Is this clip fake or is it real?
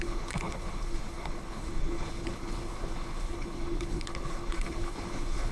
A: fake